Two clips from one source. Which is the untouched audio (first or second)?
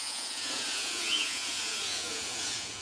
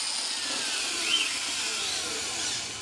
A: second